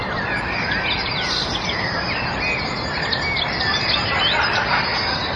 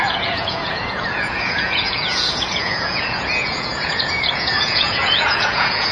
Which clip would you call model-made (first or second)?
second